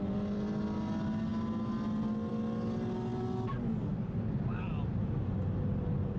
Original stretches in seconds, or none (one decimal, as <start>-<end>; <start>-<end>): 0.0-6.2